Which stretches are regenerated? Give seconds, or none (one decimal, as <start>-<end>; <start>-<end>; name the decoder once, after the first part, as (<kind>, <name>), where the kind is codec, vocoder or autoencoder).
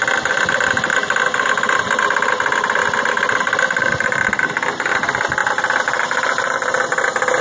none